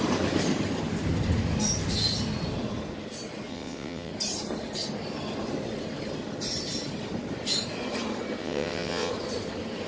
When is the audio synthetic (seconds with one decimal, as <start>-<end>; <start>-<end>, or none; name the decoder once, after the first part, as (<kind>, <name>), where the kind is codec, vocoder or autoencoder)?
3.5-4.1 (vocoder, WaveNeXt); 8.4-9.1